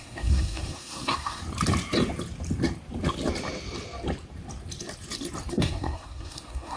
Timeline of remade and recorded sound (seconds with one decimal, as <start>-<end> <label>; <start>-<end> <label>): 0.0-1.4 remade; 1.4-5.5 recorded; 5.5-6.8 remade